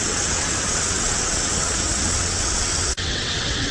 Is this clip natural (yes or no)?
no